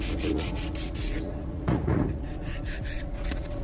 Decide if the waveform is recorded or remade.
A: remade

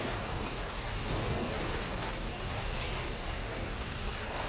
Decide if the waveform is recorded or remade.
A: remade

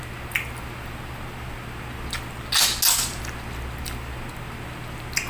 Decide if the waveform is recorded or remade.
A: recorded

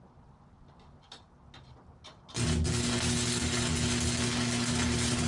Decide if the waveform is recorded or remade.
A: recorded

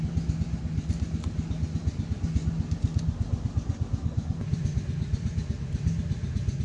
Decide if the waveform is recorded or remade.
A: recorded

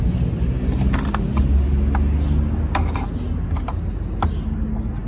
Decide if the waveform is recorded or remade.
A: recorded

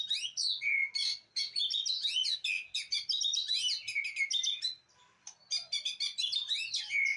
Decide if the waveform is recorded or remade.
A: recorded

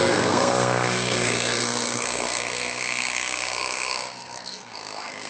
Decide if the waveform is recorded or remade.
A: remade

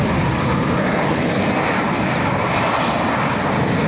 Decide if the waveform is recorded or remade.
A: recorded